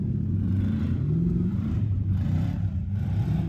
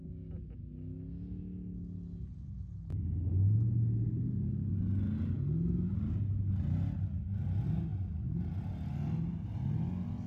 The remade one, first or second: first